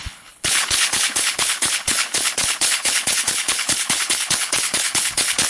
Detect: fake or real fake